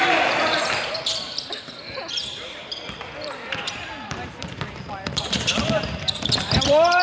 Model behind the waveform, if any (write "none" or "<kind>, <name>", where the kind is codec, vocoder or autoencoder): vocoder, BigVGAN v2